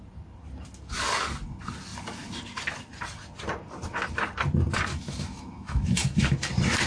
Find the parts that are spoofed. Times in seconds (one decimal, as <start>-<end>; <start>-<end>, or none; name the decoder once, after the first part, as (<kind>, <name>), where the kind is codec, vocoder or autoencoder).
4.9-6.5 (autoencoder, DAC-VAE)